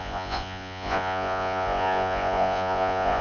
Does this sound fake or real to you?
fake